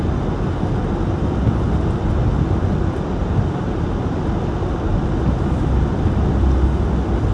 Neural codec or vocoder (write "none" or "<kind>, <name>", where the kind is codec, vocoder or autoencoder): none